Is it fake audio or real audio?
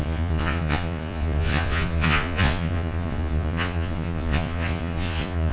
fake